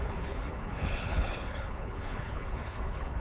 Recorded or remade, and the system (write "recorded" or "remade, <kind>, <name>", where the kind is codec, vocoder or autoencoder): remade, codec, HILCodec